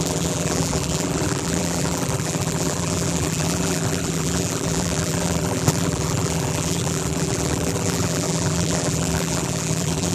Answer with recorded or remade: remade